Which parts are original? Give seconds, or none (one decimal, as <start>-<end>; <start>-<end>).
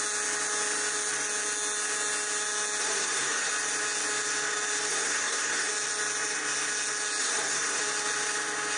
0.0-2.8; 3.5-4.9; 5.7-7.2; 7.8-8.8